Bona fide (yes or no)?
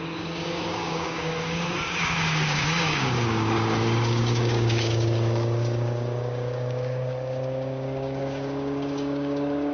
no